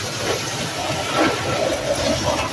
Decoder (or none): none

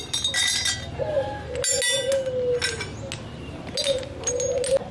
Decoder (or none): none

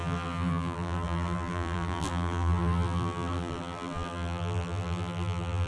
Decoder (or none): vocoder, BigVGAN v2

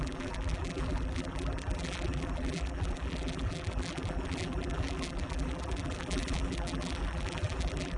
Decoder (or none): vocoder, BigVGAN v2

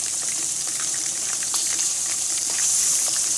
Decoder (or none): vocoder, BigVGAN v2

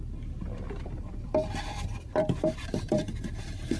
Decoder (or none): vocoder, BigVGAN v2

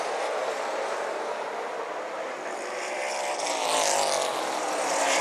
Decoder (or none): vocoder, BigVGAN v2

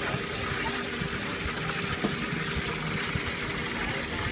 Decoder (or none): none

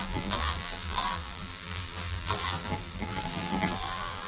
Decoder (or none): vocoder, BigVGAN v2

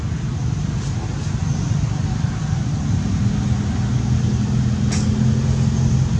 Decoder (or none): none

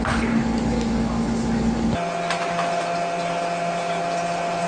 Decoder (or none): none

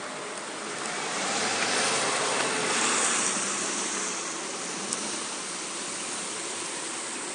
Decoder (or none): none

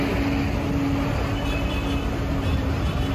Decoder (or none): none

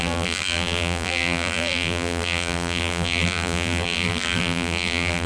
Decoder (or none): vocoder, BigVGAN v2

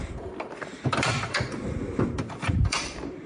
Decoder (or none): vocoder, BigVGAN v2